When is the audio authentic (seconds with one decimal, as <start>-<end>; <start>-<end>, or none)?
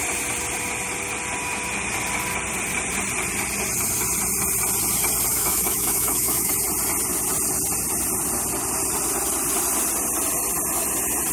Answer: 0.0-5.3; 6.5-11.3